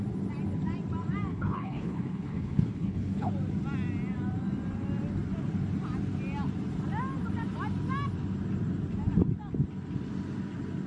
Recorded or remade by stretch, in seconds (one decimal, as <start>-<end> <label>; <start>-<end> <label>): 0.0-1.3 recorded; 1.3-3.3 remade; 3.3-10.9 recorded